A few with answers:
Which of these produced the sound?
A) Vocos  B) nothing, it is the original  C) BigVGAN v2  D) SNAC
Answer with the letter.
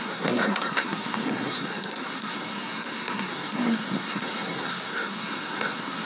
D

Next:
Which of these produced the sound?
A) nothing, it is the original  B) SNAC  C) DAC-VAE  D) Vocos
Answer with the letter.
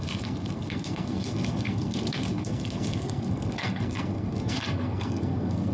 B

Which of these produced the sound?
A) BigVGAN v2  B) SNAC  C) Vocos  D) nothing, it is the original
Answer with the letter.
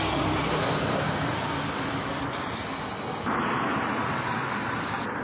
D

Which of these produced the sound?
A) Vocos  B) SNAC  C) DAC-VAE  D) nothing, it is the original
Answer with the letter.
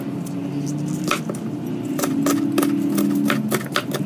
D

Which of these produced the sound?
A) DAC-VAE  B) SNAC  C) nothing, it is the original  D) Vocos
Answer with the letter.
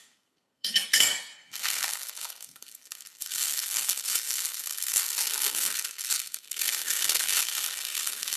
B